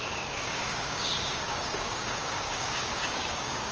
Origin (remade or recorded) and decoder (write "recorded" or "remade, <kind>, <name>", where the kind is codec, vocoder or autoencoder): remade, codec, DAC